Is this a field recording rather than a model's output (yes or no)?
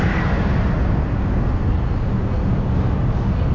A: yes